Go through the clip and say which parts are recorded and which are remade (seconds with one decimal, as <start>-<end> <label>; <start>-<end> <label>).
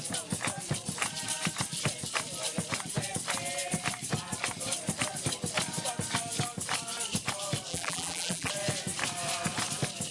0.0-7.7 recorded; 7.7-8.5 remade; 8.5-10.1 recorded